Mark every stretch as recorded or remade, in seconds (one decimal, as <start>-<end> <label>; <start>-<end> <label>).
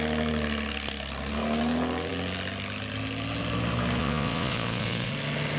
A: 0.0-4.0 recorded; 4.0-5.1 remade; 5.1-5.6 recorded